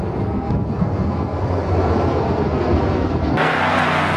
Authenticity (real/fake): fake